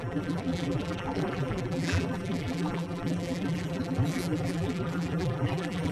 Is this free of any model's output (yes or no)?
no